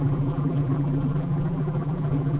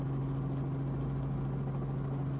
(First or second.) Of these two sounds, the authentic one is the second